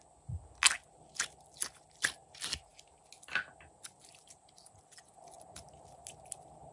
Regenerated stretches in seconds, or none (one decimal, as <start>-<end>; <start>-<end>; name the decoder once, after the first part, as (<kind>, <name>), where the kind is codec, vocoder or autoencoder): none